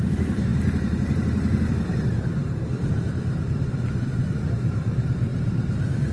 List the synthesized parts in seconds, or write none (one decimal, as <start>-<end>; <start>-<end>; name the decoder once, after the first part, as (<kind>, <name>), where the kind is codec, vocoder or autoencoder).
0.0-6.1 (vocoder, BigVGAN v2)